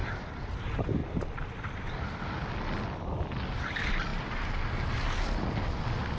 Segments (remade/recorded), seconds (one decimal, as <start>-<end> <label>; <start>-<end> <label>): 0.0-0.6 remade; 0.6-1.0 recorded; 1.0-2.2 remade; 2.2-6.2 recorded

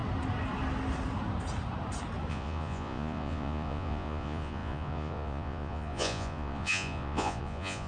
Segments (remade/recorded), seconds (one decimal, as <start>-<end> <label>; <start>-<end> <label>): 0.0-2.3 recorded; 2.3-7.9 remade

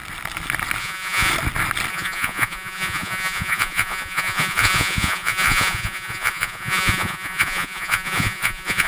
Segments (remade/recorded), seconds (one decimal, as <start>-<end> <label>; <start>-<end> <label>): 0.0-0.8 recorded; 0.8-1.3 remade; 1.3-1.9 recorded; 1.9-8.9 remade

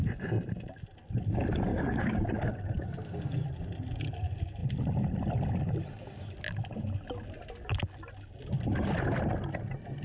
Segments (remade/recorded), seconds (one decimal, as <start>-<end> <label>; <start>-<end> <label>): 0.0-1.7 recorded; 1.7-2.5 remade; 2.5-10.0 recorded

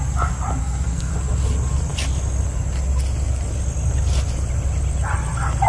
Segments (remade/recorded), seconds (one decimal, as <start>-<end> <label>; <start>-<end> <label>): 0.0-0.6 recorded; 0.6-1.1 remade; 1.1-5.7 recorded

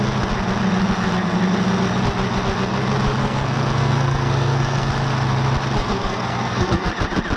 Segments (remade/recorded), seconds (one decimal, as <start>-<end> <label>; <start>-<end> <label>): 0.0-3.2 recorded; 3.2-4.9 remade; 4.9-5.8 recorded; 5.8-6.9 remade; 6.9-7.4 recorded

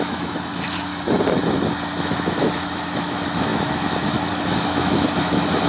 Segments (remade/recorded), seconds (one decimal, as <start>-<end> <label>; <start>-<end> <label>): 0.0-0.9 remade; 0.9-2.0 recorded; 2.0-5.7 remade